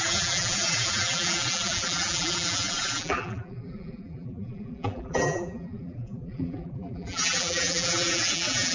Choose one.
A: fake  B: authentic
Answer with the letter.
A